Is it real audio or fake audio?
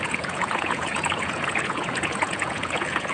fake